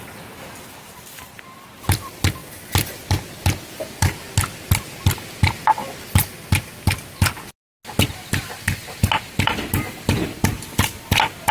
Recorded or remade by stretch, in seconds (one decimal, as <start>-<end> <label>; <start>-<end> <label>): 0.0-11.5 recorded